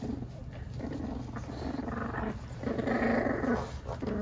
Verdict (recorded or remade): recorded